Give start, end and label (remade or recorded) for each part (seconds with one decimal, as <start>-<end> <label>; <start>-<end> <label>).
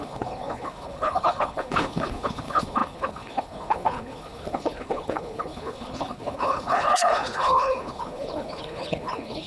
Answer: 0.0-9.5 remade